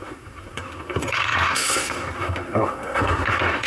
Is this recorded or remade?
remade